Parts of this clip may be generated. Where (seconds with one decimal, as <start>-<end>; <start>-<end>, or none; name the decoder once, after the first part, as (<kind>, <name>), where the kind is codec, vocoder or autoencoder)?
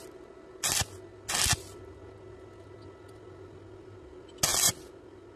none